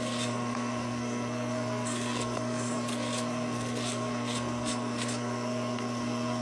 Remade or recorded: remade